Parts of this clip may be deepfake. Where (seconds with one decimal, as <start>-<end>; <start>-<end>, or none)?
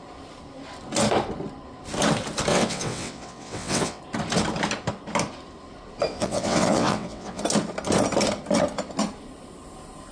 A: 2.5-4.0; 6.1-7.4